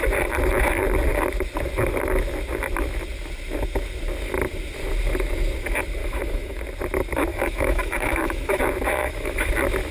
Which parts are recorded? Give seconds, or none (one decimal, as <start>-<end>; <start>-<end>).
0.0-6.0; 6.6-7.3; 8.6-9.0; 9.5-9.9